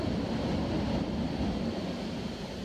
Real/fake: fake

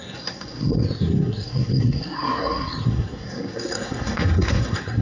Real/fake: fake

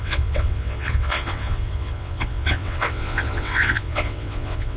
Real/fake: fake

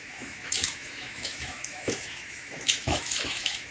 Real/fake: fake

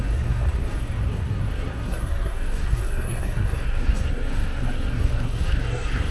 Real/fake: fake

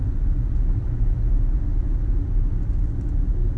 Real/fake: real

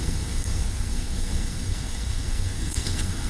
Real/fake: fake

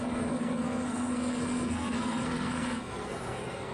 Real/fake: fake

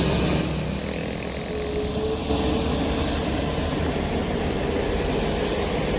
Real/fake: real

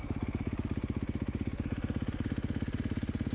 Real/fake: real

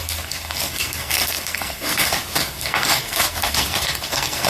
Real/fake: fake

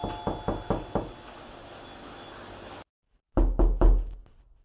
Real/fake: real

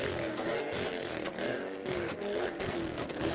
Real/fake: fake